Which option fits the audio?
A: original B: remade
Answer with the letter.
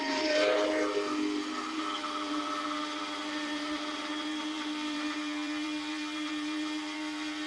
B